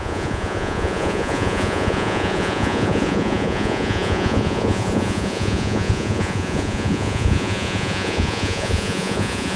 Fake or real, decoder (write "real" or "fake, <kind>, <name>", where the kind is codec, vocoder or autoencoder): fake, vocoder, Vocos